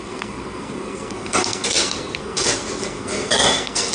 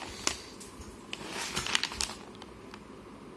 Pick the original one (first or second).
second